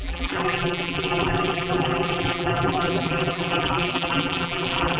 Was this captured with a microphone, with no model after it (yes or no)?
no